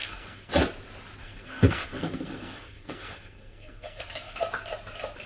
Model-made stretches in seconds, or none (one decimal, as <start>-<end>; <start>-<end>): 0.0-0.5; 1.2-4.4